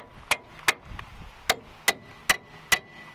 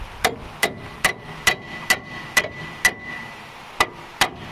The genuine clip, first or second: first